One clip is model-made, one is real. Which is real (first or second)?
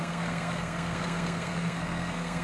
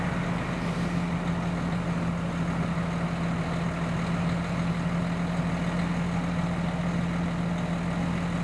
second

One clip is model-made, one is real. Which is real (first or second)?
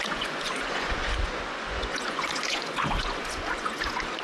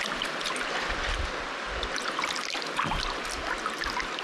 second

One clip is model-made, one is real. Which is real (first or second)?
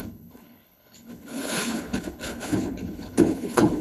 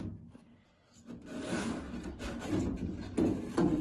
second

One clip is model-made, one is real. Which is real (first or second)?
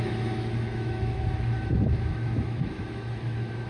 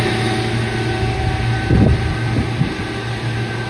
second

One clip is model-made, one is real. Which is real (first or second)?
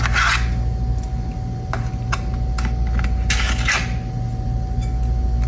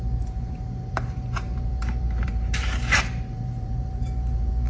first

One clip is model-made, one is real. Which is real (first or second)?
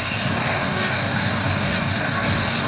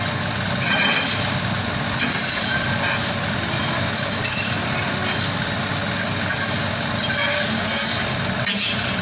second